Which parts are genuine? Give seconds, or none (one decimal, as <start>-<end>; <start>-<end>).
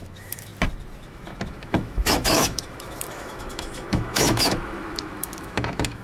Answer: 0.5-1.0